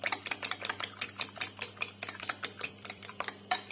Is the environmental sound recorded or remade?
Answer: remade